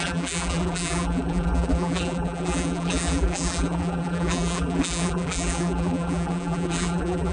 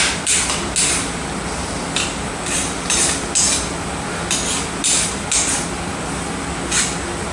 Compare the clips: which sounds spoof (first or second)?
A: first